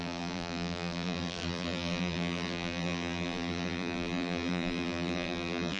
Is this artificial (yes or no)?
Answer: yes